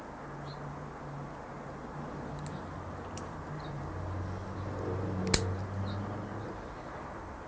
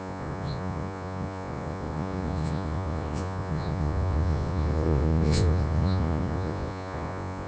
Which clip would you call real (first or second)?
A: first